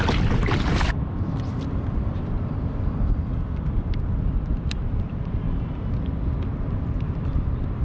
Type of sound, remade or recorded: remade